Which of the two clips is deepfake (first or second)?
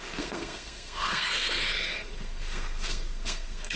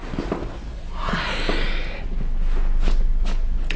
first